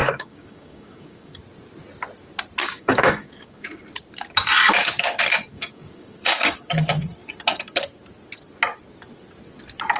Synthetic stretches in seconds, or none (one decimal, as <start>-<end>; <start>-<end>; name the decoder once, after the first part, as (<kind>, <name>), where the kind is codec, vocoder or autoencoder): 0.0-1.4 (codec, DAC); 2.6-3.8; 5.5-7.0